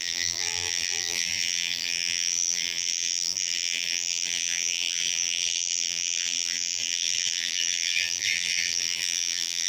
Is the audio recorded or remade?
remade